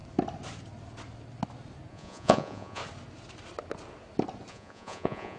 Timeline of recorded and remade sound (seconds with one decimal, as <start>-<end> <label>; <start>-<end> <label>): 0.0-1.9 recorded; 1.9-2.8 remade; 2.8-4.5 recorded; 4.5-5.4 remade